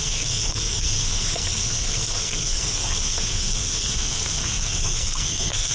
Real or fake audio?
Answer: fake